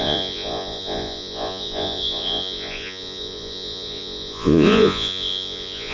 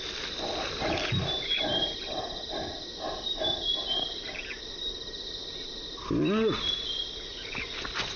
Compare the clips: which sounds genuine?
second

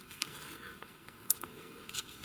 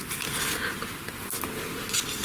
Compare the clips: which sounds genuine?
second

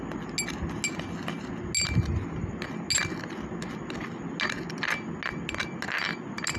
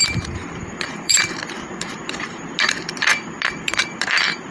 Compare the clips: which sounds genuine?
first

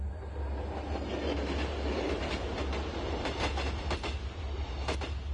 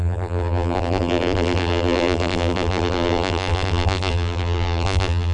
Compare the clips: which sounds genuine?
first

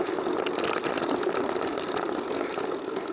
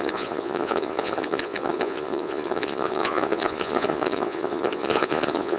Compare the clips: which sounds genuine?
first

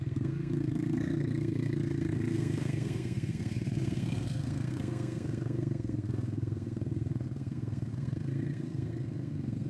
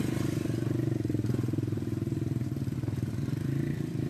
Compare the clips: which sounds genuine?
second